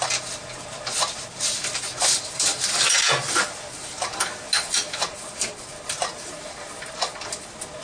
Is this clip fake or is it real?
real